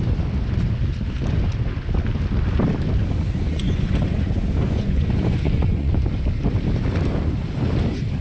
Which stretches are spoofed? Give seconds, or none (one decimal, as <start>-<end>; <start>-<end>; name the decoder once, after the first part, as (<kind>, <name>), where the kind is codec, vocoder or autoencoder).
3.5-5.9 (vocoder, Vocos)